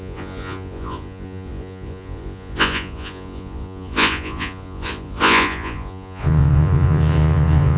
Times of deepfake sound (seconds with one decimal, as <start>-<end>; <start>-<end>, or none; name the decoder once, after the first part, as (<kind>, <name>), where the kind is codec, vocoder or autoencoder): 0.0-7.8 (vocoder, Vocos)